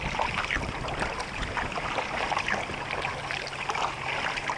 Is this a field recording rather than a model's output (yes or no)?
yes